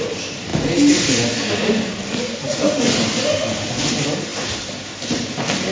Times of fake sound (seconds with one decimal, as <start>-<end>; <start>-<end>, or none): none